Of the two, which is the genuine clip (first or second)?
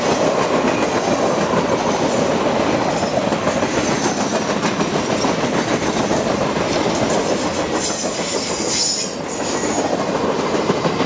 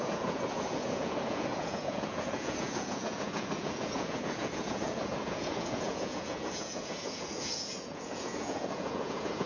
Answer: first